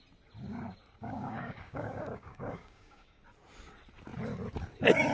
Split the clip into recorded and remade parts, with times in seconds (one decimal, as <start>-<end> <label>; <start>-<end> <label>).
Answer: 0.0-1.0 recorded; 1.0-3.2 remade; 3.2-5.1 recorded